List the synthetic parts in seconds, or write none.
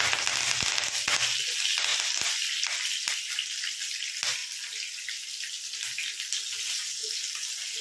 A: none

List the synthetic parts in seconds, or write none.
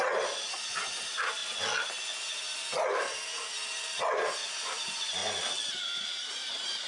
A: 0.0-1.4 (vocoder, BigVGAN v2); 4.5-5.2; 5.7-6.9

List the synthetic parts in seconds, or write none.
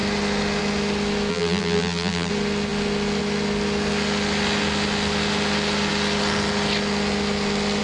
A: 1.3-2.3 (vocoder, BigVGAN v2)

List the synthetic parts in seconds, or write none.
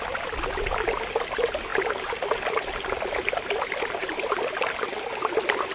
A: none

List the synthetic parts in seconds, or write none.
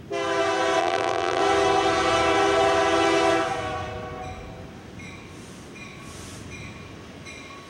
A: 0.8-1.4 (vocoder, BigVGAN v2)